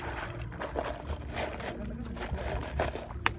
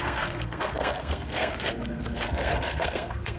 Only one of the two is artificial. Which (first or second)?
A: second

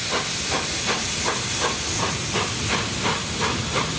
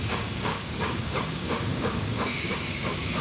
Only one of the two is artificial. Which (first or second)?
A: second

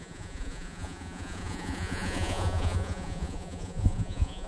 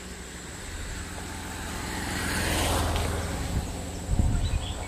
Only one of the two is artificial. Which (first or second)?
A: first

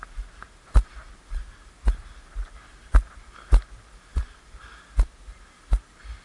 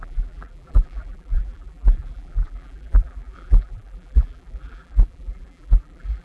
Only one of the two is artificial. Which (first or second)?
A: second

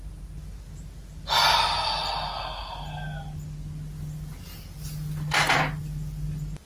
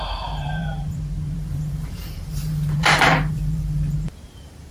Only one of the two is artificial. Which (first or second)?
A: second